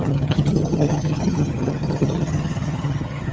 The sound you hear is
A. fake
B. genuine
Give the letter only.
A